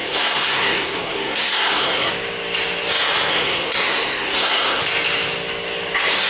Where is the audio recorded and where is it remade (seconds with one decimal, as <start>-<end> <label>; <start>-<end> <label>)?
0.0-2.1 remade; 2.1-3.3 recorded; 3.3-4.8 remade; 4.8-6.3 recorded